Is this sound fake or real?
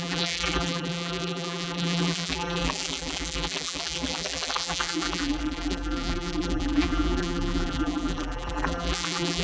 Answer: fake